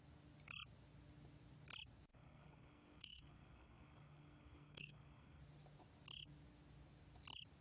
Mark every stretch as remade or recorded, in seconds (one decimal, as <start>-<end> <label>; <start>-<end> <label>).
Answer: 0.0-2.1 recorded; 2.1-5.4 remade; 5.4-7.6 recorded

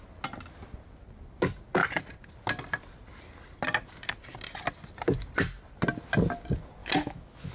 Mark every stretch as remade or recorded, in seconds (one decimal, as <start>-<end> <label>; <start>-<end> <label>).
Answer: 0.0-6.8 recorded; 6.8-7.5 remade

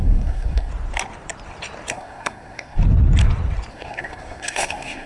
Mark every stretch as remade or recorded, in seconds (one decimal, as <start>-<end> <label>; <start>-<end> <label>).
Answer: 0.0-0.7 remade; 0.7-1.9 recorded; 1.9-2.8 remade; 2.8-3.7 recorded; 3.7-5.1 remade

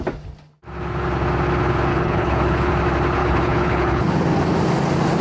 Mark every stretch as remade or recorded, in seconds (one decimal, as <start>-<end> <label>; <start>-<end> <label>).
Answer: 0.0-1.9 recorded; 1.9-2.7 remade; 2.7-3.2 recorded; 3.2-4.1 remade; 4.1-5.2 recorded